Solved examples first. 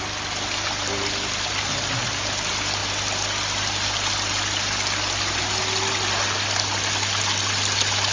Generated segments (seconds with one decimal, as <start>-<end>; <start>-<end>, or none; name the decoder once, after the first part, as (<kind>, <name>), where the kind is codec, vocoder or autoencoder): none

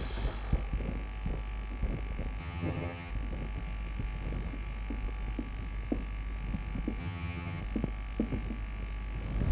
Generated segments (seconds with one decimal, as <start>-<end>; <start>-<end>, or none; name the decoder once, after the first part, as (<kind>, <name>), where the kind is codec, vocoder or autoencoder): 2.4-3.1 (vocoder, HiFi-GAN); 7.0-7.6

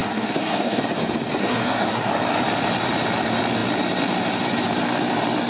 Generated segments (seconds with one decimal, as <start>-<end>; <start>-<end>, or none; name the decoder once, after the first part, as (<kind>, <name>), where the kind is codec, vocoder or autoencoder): 0.0-0.8 (codec, SNAC); 1.4-2.1